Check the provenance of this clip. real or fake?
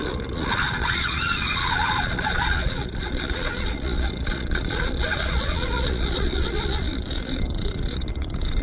fake